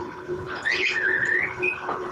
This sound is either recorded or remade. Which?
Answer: remade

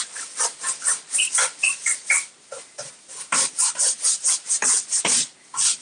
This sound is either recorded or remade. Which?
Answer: recorded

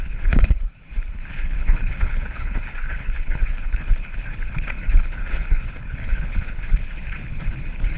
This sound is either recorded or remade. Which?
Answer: remade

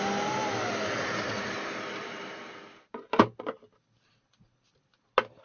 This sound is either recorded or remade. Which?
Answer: recorded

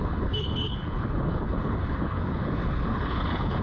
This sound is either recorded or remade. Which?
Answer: remade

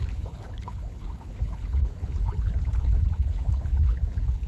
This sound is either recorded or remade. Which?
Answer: remade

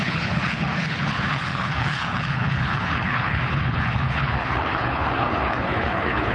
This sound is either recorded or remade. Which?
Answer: remade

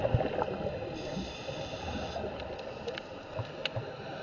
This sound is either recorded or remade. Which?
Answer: recorded